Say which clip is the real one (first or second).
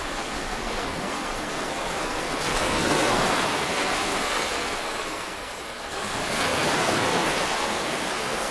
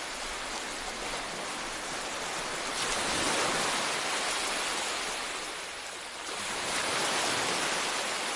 second